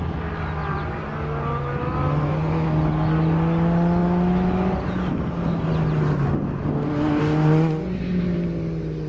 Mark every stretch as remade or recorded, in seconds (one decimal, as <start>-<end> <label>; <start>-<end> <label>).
0.0-9.1 recorded